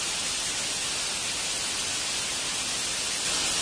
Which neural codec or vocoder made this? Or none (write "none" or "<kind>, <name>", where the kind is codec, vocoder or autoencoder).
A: none